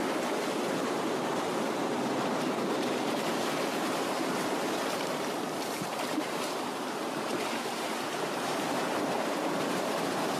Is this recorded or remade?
remade